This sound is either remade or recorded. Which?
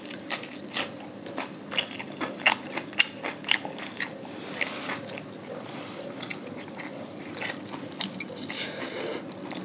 recorded